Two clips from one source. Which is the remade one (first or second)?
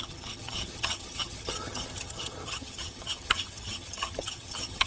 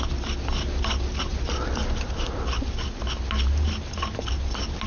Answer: first